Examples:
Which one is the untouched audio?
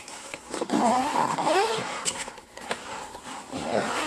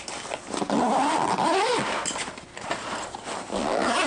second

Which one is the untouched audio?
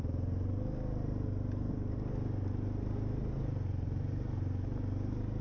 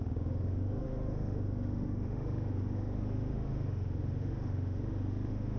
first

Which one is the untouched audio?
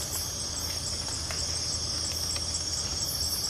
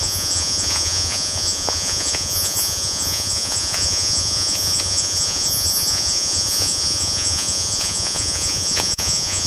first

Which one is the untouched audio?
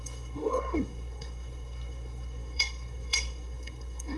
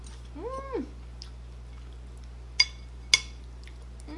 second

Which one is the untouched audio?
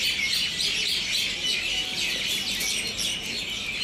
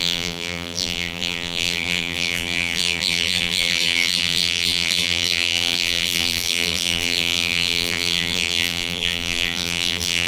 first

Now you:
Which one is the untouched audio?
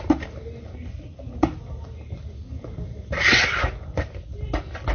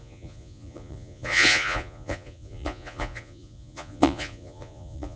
first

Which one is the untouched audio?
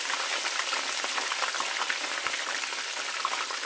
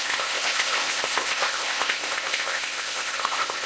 first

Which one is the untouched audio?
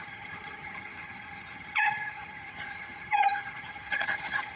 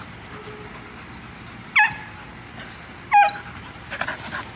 second